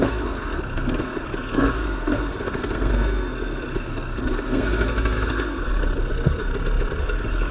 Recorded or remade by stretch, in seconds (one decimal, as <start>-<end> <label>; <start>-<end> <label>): 0.0-6.5 remade; 6.5-7.0 recorded; 7.0-7.5 remade